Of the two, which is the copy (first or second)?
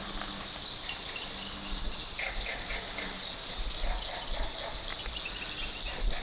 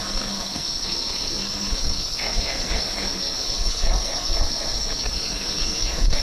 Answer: second